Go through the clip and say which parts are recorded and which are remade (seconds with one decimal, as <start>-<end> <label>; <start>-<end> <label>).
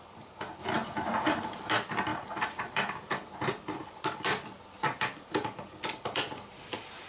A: 0.0-7.1 recorded